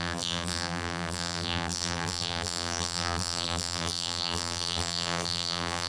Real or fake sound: fake